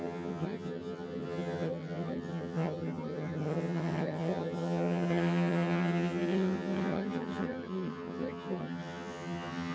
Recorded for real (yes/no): no